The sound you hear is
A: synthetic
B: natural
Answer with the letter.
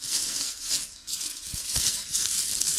A